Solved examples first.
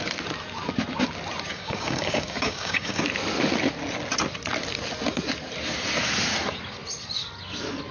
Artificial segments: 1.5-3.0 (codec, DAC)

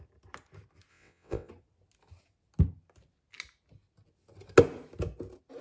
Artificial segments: 0.9-1.5 (vocoder, WaveNeXt)